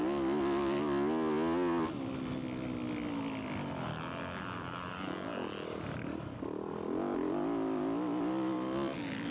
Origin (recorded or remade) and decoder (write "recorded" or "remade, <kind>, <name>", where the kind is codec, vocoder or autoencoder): recorded